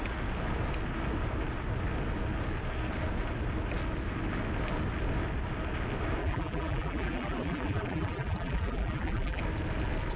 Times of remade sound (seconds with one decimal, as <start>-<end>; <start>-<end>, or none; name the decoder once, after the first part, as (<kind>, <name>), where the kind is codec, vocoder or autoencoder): 6.2-9.4 (vocoder, BigVGAN v2)